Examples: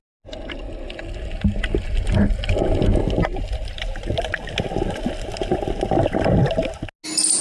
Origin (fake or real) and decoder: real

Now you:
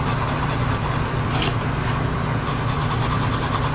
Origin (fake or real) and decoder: real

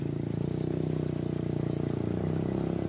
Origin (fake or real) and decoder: fake, vocoder, BigVGAN v2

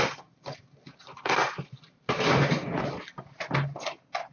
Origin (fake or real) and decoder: real